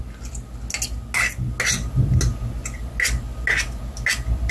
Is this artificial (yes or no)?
no